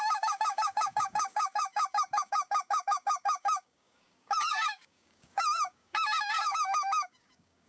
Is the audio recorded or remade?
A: remade